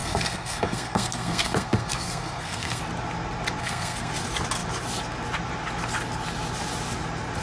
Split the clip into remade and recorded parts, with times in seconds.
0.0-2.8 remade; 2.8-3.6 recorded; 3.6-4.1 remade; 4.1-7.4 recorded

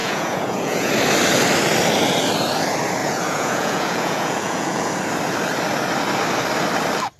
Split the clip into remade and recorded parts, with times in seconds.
0.0-0.9 remade; 0.9-3.0 recorded; 3.0-4.9 remade; 4.9-7.2 recorded

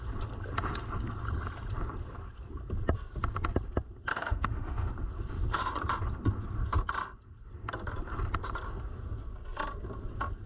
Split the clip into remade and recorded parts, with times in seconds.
0.0-4.1 recorded; 4.1-4.9 remade; 4.9-10.5 recorded

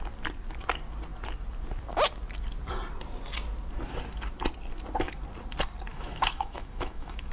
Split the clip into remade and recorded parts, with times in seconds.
0.0-5.9 recorded; 5.9-7.3 remade

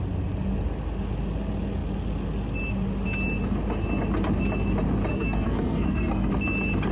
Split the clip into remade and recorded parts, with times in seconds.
0.0-5.1 recorded; 5.1-6.3 remade; 6.3-6.9 recorded

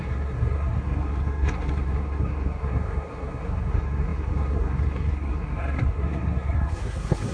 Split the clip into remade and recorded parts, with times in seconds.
0.0-7.3 remade